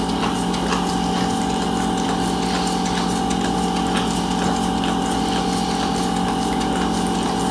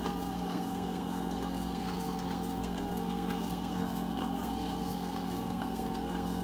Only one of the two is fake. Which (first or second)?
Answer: second